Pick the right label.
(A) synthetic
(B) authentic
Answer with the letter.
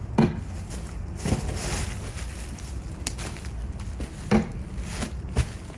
B